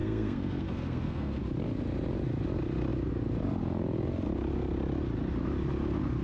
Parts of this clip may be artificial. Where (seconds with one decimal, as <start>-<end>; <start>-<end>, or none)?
0.0-1.4